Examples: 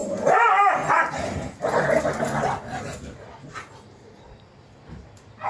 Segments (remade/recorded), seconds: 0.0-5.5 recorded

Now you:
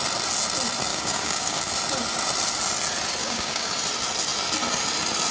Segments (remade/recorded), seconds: 0.0-0.9 recorded; 0.9-1.6 remade; 1.6-3.2 recorded; 3.2-3.7 remade; 3.7-5.3 recorded

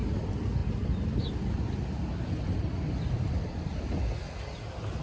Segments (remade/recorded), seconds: 0.0-5.0 recorded

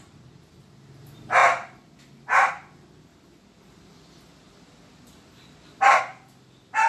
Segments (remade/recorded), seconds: 0.0-3.1 recorded; 3.1-6.0 remade; 6.0-6.9 recorded

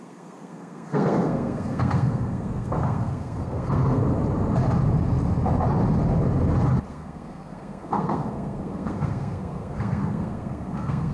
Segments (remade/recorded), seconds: 0.0-4.0 remade; 4.0-6.9 recorded; 6.9-11.1 remade

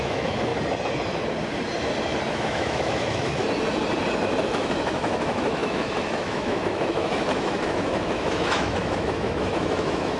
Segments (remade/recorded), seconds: 0.0-0.5 remade; 0.5-2.3 recorded; 2.3-3.4 remade; 3.4-4.4 recorded; 4.4-10.2 remade

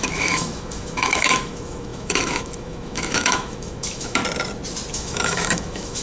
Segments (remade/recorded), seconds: 0.0-4.2 remade; 4.2-4.9 recorded; 4.9-6.0 remade

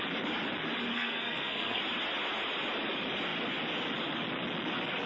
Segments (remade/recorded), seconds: 0.0-0.9 recorded; 0.9-1.8 remade; 1.8-5.1 recorded